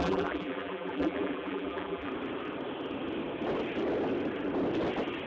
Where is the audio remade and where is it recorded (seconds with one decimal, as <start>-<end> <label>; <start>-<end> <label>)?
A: 0.0-2.1 remade; 2.1-5.3 recorded

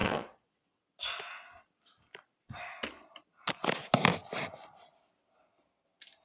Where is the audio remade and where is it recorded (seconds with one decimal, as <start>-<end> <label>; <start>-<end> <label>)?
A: 0.0-1.0 remade; 1.0-6.2 recorded

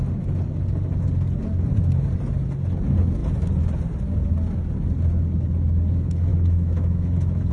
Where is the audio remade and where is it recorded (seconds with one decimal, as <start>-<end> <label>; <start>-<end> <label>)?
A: 0.0-6.3 recorded; 6.3-7.5 remade

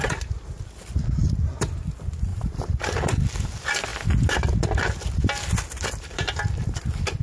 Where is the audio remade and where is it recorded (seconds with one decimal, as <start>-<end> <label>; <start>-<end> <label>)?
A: 0.0-2.3 recorded; 2.3-2.8 remade; 2.8-7.2 recorded